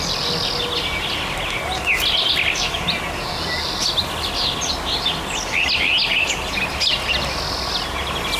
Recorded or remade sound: recorded